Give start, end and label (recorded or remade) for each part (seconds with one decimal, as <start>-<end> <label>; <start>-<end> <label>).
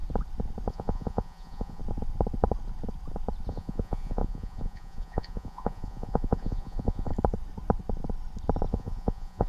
0.0-0.7 recorded; 0.7-1.8 remade; 1.8-3.5 recorded; 3.5-7.1 remade; 7.1-8.7 recorded; 8.7-9.5 remade